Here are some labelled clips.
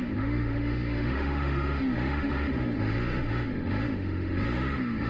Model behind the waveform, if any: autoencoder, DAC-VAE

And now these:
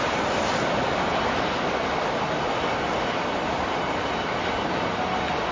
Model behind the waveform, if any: none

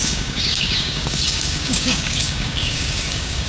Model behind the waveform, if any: codec, DAC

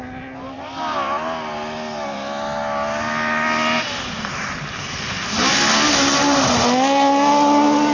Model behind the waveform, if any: none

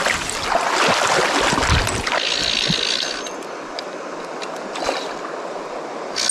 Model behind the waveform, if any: none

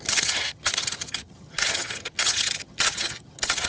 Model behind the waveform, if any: vocoder, HiFi-GAN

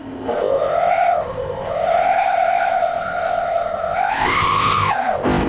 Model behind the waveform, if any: codec, ZipCodec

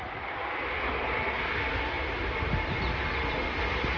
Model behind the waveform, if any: none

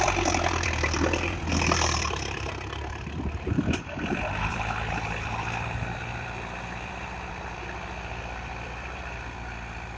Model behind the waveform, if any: vocoder, BigVGAN v2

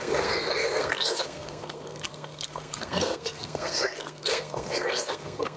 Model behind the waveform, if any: codec, SNAC